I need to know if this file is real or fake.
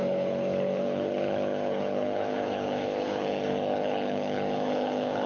fake